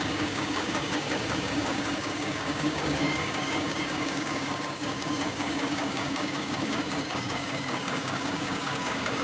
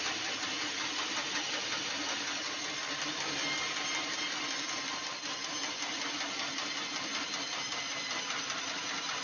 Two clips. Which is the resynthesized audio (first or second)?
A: first